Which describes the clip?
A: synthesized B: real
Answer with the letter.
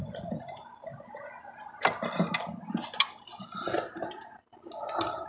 B